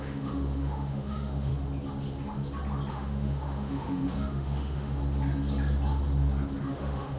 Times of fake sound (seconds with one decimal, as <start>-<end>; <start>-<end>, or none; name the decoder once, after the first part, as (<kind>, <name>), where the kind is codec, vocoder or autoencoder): 0.0-1.5 (autoencoder, DAC-VAE); 2.9-5.0; 6.7-7.2